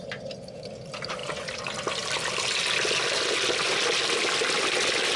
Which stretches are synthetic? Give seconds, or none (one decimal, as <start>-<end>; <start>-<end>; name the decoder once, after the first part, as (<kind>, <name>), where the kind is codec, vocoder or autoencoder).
none